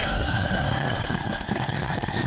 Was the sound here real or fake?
fake